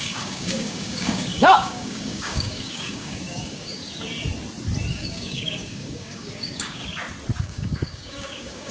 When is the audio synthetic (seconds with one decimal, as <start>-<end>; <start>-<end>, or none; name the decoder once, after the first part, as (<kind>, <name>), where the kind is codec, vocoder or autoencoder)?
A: 0.0-3.8 (codec, DAC); 4.9-6.8; 7.4-8.7

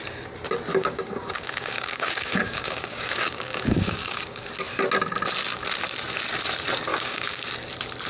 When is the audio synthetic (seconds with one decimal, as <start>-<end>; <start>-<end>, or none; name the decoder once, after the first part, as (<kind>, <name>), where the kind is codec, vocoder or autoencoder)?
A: 0.7-4.5 (codec, DAC); 6.9-7.5

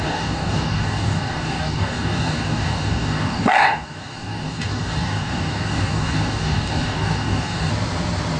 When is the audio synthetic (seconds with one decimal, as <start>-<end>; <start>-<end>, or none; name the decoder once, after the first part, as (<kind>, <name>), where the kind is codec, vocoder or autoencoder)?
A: 0.0-7.7 (codec, DAC)

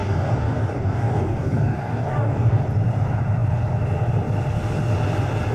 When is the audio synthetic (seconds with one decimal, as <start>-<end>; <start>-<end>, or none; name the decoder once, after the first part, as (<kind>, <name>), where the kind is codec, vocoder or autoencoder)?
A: 0.0-2.6 (codec, DAC)

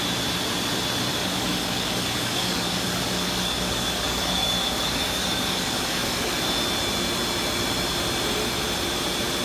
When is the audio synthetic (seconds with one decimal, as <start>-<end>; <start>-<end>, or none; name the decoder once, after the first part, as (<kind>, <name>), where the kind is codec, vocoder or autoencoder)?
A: 1.1-6.3 (codec, DAC)

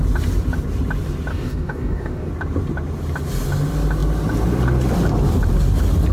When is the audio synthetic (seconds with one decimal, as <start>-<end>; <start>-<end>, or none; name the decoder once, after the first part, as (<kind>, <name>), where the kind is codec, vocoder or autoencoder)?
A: 1.3-2.3 (codec, DAC)